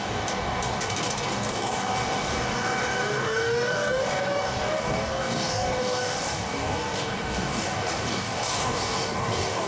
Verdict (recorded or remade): remade